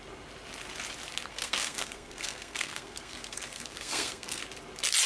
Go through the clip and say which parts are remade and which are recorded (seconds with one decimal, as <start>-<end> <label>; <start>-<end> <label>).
0.0-1.3 recorded; 1.3-4.4 remade; 4.4-5.1 recorded